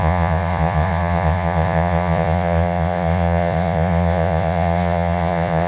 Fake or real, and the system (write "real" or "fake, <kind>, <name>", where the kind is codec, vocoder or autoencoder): fake, vocoder, Vocos